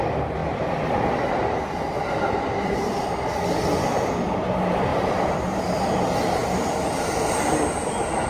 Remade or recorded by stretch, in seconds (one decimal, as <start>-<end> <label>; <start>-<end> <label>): 0.0-0.4 recorded; 0.4-4.1 remade; 4.1-4.9 recorded; 4.9-5.6 remade; 5.6-8.3 recorded